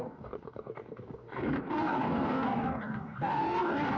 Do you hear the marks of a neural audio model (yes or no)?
yes